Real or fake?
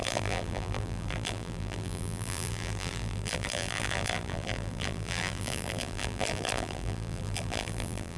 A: fake